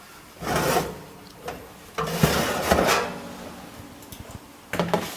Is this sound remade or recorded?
recorded